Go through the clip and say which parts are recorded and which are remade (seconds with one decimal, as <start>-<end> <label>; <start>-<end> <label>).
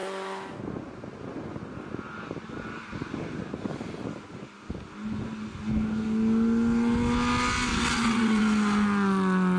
0.0-7.7 recorded; 7.7-8.4 remade; 8.4-9.6 recorded